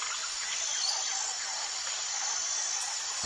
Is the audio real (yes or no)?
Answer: yes